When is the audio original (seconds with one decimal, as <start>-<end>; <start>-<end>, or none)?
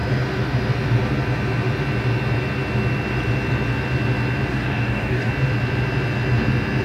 0.0-4.5; 5.3-6.8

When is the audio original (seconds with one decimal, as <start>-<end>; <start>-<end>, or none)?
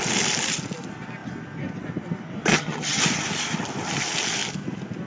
0.0-2.5; 3.0-5.1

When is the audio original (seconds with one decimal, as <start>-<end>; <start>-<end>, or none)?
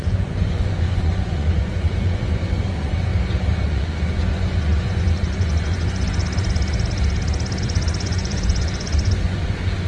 3.1-3.6; 6.2-7.6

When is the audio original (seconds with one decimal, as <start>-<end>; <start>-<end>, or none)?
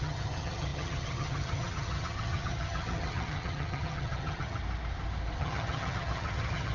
4.6-5.4